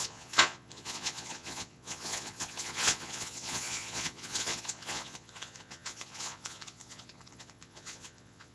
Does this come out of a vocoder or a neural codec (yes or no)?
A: yes